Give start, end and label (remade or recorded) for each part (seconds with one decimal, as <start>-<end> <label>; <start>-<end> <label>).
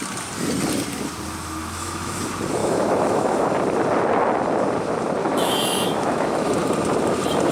0.0-1.6 recorded; 1.6-2.2 remade; 2.2-2.6 recorded; 2.6-3.5 remade; 3.5-5.2 recorded; 5.2-6.5 remade; 6.5-7.5 recorded